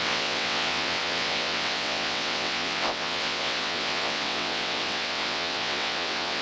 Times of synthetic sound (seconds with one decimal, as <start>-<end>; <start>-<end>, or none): 0.0-6.4